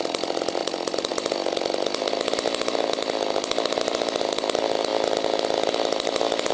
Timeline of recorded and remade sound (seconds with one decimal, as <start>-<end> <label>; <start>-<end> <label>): 0.0-6.5 recorded